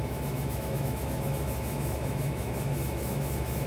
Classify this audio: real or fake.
fake